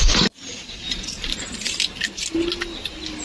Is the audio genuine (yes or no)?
yes